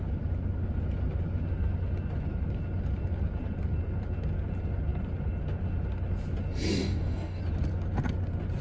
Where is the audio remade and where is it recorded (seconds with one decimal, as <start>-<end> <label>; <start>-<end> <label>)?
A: 0.0-6.8 recorded; 6.8-7.4 remade; 7.4-8.6 recorded